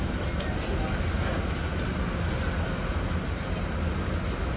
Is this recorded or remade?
recorded